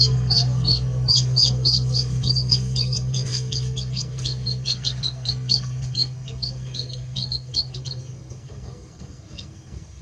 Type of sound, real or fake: fake